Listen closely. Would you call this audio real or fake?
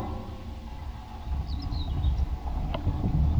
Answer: real